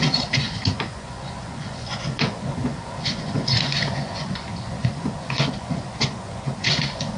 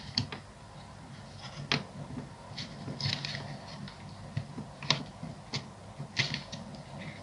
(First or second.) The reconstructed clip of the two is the first